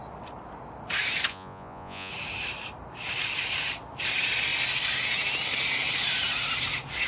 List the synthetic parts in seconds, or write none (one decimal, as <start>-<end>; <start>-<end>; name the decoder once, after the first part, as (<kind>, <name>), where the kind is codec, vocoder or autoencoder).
1.3-2.1 (vocoder, Vocos)